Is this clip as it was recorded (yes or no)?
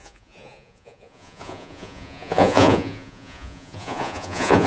no